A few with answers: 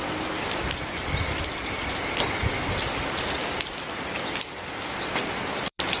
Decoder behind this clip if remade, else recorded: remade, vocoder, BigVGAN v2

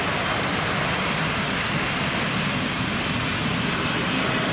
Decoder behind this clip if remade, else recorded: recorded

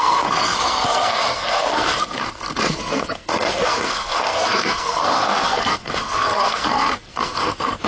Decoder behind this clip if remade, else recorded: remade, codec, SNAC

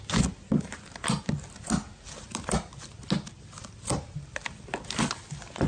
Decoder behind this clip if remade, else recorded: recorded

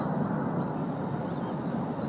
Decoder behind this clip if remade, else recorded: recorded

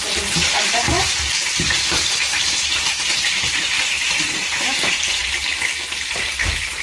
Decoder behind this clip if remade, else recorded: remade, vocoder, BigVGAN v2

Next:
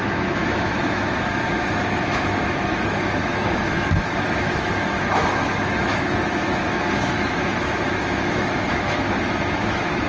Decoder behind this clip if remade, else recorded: remade, autoencoder, DAC-VAE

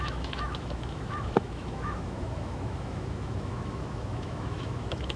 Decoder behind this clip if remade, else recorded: remade, autoencoder, DAC-VAE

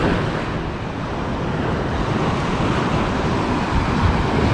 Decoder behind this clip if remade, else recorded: recorded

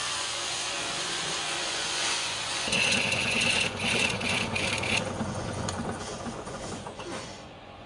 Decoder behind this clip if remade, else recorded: remade, vocoder, Vocos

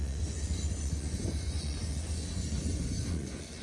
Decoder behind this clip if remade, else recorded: remade, vocoder, Vocos